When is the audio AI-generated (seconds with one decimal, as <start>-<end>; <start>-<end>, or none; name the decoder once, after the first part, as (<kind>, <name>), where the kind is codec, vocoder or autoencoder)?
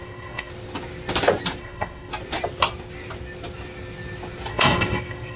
0.0-0.5 (codec, SNAC); 1.6-2.1; 4.5-5.4